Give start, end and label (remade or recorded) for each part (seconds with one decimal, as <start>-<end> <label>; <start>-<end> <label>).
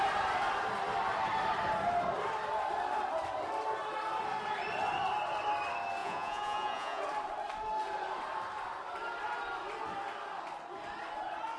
0.0-6.0 recorded; 6.0-7.0 remade; 7.0-11.6 recorded